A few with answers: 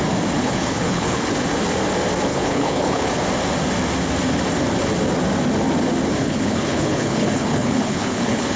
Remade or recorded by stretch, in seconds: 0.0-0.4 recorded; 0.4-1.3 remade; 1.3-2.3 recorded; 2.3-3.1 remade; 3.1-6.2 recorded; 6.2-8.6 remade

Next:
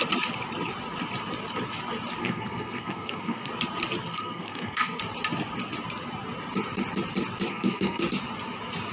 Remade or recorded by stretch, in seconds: 0.0-2.2 recorded; 2.2-3.5 remade; 3.5-4.1 recorded; 4.1-5.0 remade; 5.0-7.5 recorded; 7.5-8.0 remade; 8.0-8.9 recorded